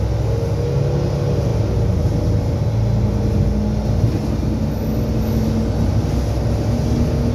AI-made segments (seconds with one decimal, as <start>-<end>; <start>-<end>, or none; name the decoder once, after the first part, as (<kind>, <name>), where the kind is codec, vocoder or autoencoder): none